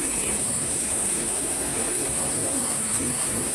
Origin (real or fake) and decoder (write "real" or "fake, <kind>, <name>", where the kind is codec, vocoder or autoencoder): fake, codec, SNAC